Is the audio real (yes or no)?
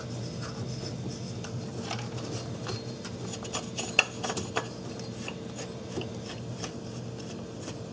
yes